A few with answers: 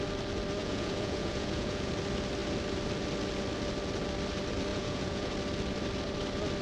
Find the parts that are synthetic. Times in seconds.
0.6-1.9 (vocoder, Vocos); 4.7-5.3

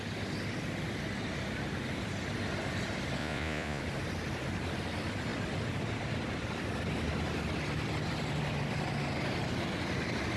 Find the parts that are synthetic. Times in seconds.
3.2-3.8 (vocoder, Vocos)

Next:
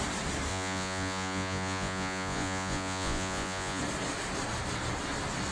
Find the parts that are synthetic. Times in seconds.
0.5-3.8 (vocoder, Vocos)

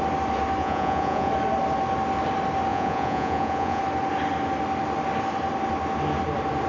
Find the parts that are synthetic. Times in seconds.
0.6-1.3 (vocoder, Vocos); 2.7-3.8

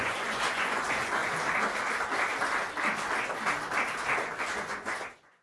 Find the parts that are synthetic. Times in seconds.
0.0-1.2 (vocoder, Vocos); 4.4-5.4

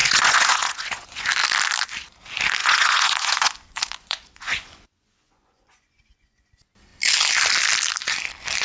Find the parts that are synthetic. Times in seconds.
0.0-1.3 (vocoder, Vocos); 2.6-6.5